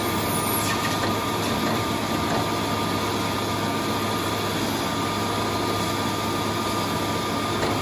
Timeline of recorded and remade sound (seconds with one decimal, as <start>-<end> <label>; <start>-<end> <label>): 0.0-0.8 recorded; 0.8-2.0 remade; 2.0-7.8 recorded